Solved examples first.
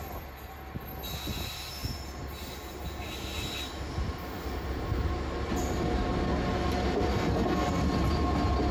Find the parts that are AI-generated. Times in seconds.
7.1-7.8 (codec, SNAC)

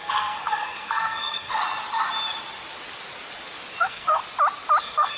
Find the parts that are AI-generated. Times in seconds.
0.0-1.6 (codec, SNAC); 3.8-4.2; 4.8-5.2

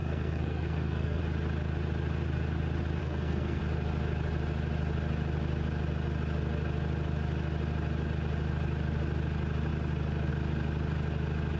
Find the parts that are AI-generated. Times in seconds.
0.0-1.2 (codec, SNAC); 3.0-3.6

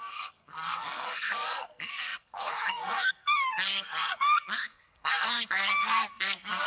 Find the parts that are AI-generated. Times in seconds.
0.0-6.7 (codec, SNAC)

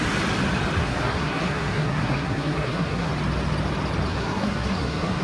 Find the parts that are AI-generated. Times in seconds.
0.8-3.1 (codec, SNAC); 4.1-5.2